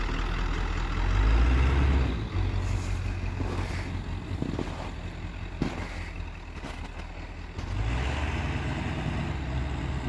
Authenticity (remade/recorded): recorded